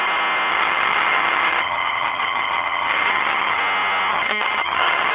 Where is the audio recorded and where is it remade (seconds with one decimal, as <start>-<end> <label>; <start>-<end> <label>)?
0.0-0.5 recorded; 0.5-3.6 remade; 3.6-4.1 recorded; 4.1-5.1 remade